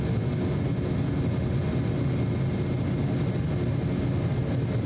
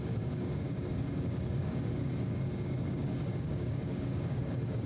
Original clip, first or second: first